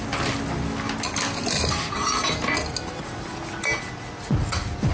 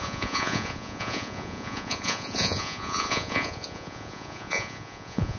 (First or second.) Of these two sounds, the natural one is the first